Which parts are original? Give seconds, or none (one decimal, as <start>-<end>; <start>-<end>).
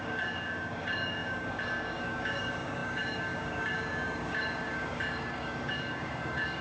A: none